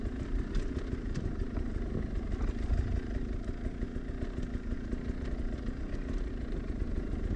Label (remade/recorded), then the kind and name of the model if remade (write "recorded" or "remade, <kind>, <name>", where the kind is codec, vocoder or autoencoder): recorded